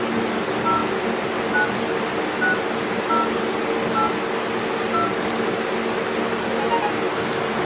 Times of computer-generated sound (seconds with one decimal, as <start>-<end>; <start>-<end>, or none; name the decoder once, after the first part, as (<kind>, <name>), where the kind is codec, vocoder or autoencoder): none